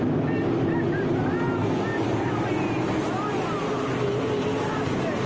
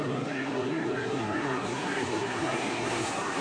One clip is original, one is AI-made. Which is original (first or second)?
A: first